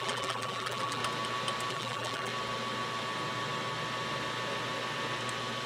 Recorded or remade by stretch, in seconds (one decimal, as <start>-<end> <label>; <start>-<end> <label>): 0.0-1.0 remade; 1.0-1.7 recorded; 1.7-2.3 remade; 2.3-5.7 recorded